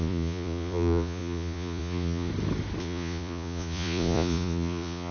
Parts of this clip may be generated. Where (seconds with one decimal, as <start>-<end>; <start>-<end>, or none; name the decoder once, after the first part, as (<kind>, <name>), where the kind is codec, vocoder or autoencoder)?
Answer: 0.0-2.3 (vocoder, Vocos); 2.8-5.1